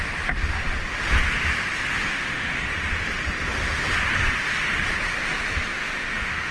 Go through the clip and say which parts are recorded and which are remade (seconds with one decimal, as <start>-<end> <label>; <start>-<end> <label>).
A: 0.0-2.1 recorded; 2.1-2.6 remade; 2.6-5.7 recorded; 5.7-6.5 remade